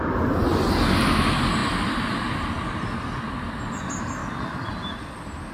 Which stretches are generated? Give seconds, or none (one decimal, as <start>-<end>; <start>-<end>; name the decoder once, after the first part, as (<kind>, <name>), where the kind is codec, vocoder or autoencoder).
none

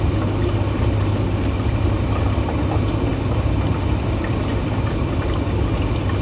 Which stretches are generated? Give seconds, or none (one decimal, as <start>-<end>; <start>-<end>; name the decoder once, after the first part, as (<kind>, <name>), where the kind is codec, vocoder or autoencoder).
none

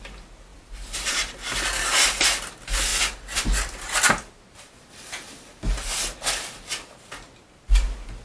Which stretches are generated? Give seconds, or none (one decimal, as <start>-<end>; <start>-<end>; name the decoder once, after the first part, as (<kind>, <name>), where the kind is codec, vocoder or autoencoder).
0.5-1.1 (vocoder, BigVGAN v2); 2.9-4.4